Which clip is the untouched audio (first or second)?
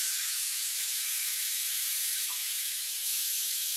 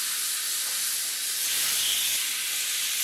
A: second